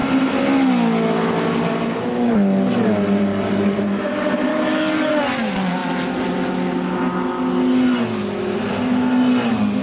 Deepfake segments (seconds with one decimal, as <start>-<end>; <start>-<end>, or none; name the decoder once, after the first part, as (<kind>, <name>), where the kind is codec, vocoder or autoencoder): 3.3-3.8 (codec, DAC); 4.5-5.2